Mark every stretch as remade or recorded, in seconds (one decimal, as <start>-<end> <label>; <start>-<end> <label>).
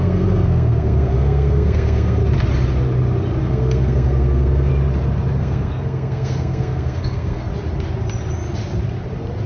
0.0-2.2 remade; 2.2-3.4 recorded; 3.4-4.7 remade; 4.7-5.4 recorded; 5.4-7.5 remade; 7.5-9.5 recorded